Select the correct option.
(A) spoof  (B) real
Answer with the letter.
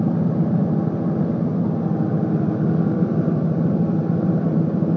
B